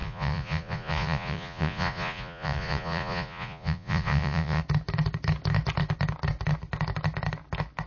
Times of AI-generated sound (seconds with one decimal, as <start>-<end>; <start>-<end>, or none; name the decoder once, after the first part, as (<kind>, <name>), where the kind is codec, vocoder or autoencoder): 0.0-4.6 (vocoder, Vocos)